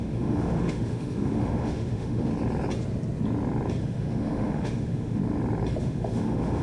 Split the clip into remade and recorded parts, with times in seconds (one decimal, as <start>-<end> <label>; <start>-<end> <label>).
0.0-2.3 remade; 2.3-3.8 recorded; 3.8-5.2 remade; 5.2-5.8 recorded; 5.8-6.6 remade